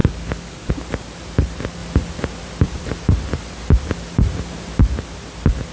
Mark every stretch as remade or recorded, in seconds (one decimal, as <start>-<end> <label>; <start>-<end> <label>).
0.0-0.7 remade; 0.7-5.7 recorded